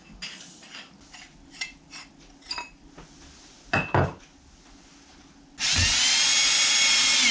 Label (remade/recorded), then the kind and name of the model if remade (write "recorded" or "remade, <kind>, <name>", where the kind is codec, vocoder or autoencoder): recorded